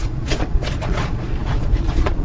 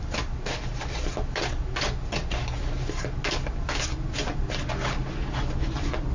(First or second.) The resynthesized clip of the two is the first